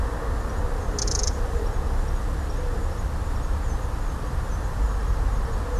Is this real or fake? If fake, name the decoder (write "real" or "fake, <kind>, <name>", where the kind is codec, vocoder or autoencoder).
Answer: real